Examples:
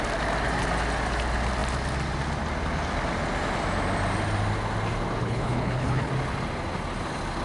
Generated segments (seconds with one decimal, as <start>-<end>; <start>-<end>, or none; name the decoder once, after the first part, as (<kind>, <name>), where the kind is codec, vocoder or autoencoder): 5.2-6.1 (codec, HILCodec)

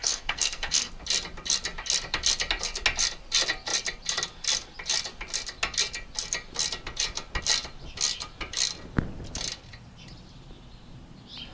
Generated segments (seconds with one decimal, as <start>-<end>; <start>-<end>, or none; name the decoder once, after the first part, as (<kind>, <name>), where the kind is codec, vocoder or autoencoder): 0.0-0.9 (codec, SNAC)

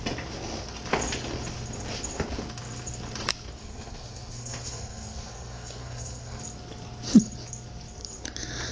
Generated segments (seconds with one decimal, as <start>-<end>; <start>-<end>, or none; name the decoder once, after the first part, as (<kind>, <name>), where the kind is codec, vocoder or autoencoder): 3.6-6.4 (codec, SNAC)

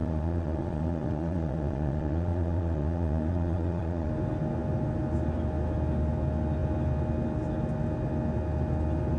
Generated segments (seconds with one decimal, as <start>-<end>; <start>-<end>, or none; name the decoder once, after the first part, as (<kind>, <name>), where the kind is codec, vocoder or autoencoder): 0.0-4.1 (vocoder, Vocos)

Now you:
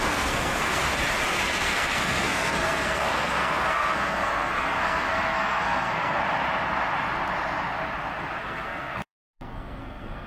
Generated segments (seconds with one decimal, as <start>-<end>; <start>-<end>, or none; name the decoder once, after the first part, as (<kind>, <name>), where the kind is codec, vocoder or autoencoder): 0.0-0.8 (codec, SNAC); 1.3-6.2; 8.4-10.3

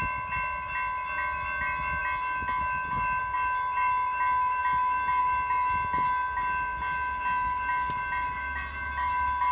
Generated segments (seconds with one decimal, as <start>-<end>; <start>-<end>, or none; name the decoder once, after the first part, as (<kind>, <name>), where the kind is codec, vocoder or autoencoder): none

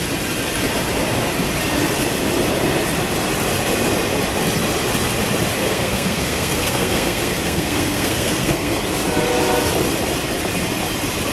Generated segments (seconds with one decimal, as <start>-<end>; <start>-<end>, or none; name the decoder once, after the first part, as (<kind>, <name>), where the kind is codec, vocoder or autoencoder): 5.6-8.8 (codec, SNAC)